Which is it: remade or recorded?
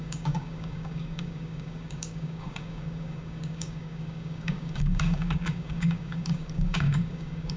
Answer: remade